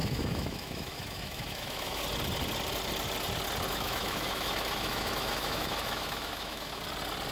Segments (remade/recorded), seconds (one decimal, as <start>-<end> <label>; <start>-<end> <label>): 0.0-2.0 remade; 2.0-3.7 recorded; 3.7-6.8 remade; 6.8-7.3 recorded